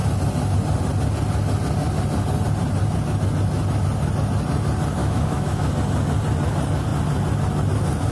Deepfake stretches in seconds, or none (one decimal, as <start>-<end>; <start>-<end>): 5.0-5.7